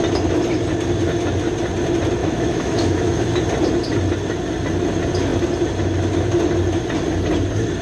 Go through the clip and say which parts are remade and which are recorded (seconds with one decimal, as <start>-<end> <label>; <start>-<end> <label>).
0.0-2.2 recorded; 2.2-3.4 remade; 3.4-7.8 recorded